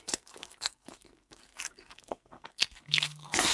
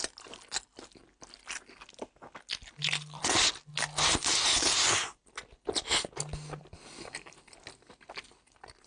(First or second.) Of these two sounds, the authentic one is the second